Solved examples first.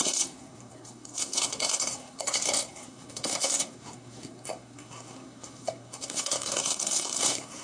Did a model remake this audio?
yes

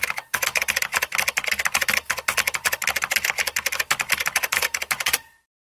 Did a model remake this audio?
no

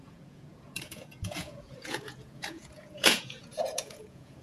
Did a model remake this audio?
yes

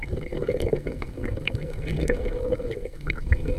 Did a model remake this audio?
yes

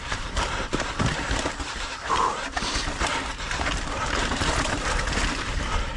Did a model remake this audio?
yes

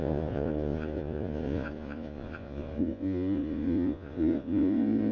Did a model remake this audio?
yes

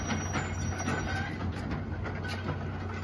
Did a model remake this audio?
no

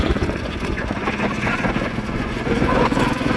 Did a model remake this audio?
yes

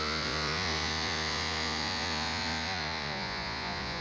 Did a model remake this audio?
yes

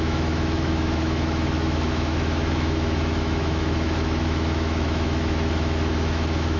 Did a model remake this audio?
yes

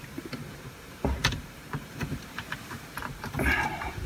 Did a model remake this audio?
yes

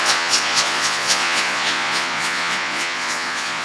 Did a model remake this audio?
yes